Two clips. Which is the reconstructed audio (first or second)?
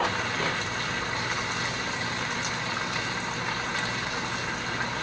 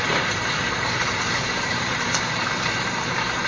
second